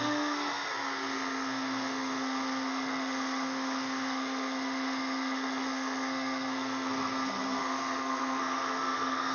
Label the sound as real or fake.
fake